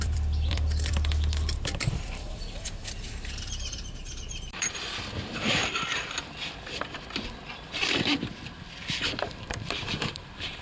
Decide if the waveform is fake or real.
fake